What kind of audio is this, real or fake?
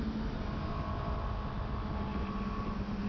real